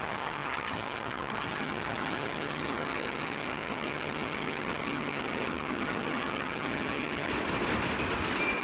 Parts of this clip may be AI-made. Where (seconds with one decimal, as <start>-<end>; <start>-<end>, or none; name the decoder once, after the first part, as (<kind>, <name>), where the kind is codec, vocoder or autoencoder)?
0.0-7.3 (vocoder, HiFi-GAN)